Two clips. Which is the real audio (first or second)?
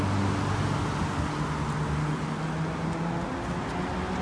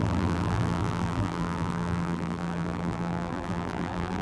first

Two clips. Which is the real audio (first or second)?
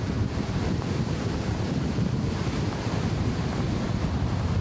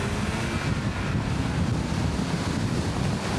second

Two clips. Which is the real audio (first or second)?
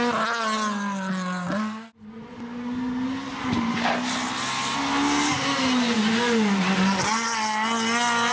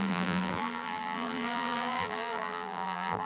first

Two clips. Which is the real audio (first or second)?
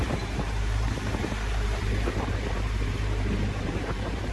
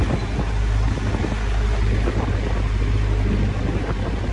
second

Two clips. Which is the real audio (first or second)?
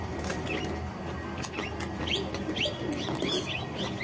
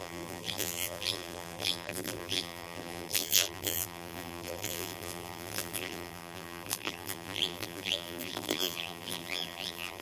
first